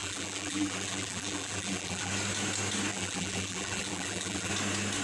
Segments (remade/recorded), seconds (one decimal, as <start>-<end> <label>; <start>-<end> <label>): 0.0-2.1 remade; 2.1-2.9 recorded; 2.9-4.5 remade; 4.5-5.0 recorded